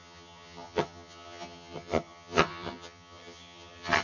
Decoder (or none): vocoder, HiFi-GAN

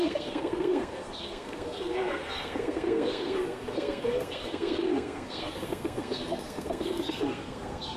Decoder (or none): codec, SNAC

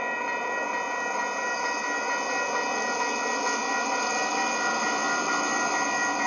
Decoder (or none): none